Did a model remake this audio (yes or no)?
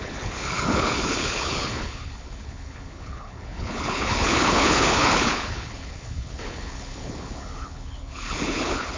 yes